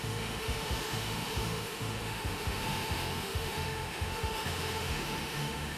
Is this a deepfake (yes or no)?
yes